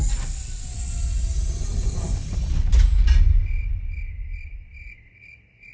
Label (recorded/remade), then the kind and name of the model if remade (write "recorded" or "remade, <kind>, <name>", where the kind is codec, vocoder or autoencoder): recorded